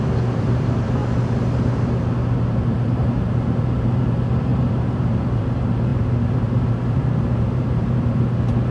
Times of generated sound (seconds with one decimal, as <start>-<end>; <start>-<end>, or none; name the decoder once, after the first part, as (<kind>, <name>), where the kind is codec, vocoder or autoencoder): 0.0-1.0 (vocoder, BigVGAN v2); 2.4-8.7